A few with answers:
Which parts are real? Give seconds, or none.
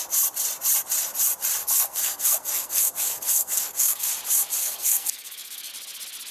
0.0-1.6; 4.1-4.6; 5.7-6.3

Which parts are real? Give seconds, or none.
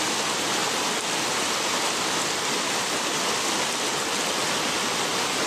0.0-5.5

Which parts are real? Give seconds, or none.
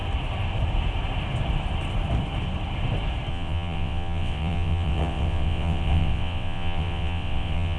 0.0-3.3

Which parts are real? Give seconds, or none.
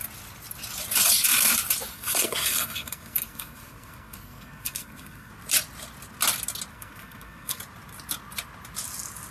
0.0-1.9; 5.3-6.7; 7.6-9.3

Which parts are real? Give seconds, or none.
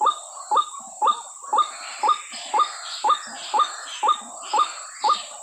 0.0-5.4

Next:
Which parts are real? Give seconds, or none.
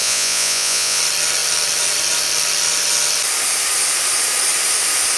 1.0-5.2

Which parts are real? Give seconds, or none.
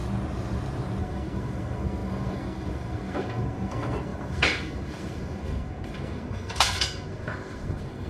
0.0-1.0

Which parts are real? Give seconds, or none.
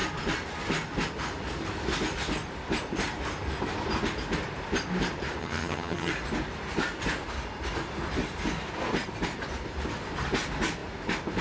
0.0-5.4; 6.1-11.4